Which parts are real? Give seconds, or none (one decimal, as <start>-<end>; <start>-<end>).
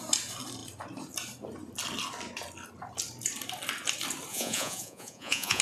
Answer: 0.0-4.3